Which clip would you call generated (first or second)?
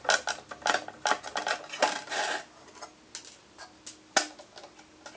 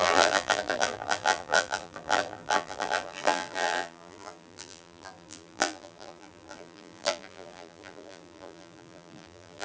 second